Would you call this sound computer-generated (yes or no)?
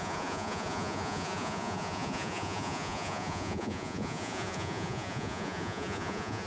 yes